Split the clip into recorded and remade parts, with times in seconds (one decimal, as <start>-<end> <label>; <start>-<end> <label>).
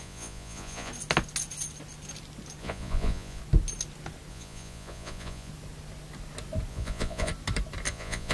0.0-0.9 remade; 0.9-2.6 recorded; 2.6-3.4 remade; 3.4-4.3 recorded; 4.3-5.5 remade; 5.5-6.7 recorded; 6.7-7.3 remade; 7.3-7.9 recorded; 7.9-8.3 remade